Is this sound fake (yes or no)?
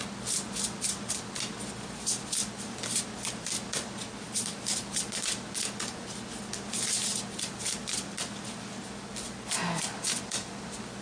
no